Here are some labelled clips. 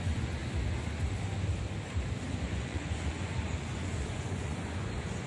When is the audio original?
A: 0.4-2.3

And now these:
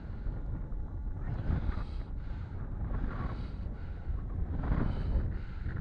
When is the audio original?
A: 2.4-4.1; 4.5-5.8

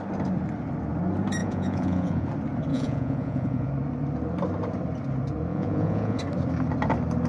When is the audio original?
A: 0.0-1.4; 2.3-2.7; 3.7-5.5; 6.2-7.3

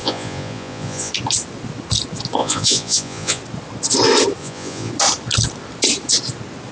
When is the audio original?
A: 1.1-2.4; 3.4-4.4; 4.9-6.7